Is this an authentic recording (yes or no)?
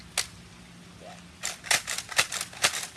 yes